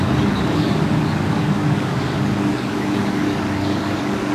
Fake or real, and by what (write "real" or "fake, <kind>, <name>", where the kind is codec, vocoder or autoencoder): fake, codec, DAC